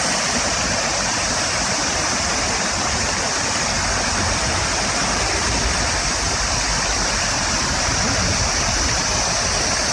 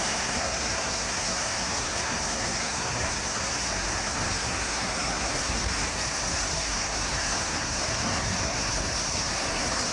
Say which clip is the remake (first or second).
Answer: second